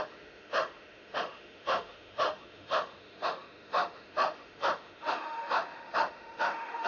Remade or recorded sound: remade